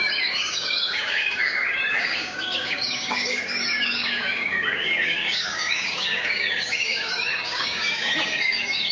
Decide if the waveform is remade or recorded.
remade